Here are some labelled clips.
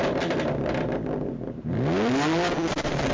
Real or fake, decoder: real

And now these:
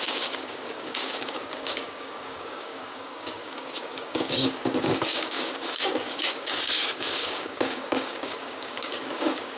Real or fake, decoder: fake, codec, DAC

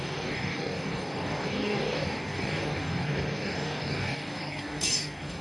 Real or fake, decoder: fake, codec, DAC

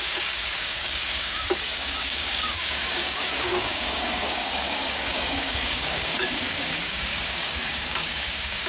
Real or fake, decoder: fake, codec, DAC